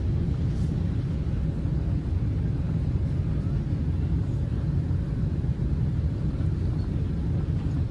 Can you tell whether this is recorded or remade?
recorded